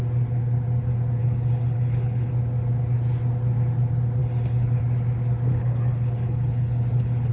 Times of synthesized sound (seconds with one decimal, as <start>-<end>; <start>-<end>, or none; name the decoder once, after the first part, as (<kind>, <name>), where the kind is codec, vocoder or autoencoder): 1.2-2.3 (codec, HILCodec); 4.2-4.8; 5.5-7.3